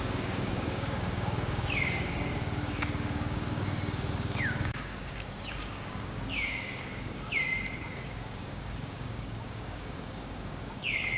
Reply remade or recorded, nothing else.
remade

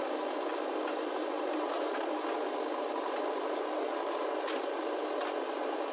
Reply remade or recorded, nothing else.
recorded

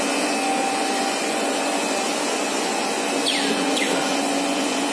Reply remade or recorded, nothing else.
remade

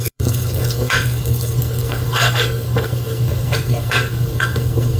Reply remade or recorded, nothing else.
remade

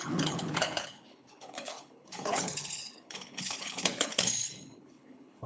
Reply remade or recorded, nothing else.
remade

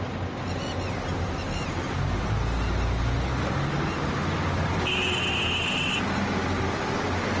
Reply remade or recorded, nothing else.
recorded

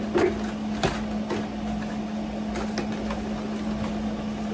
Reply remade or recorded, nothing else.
recorded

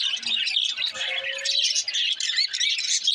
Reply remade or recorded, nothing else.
recorded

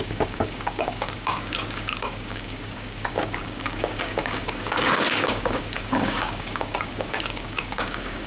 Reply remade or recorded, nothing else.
remade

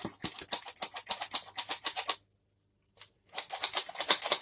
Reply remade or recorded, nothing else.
recorded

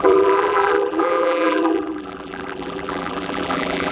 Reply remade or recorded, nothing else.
remade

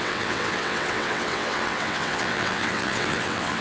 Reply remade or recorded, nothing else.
remade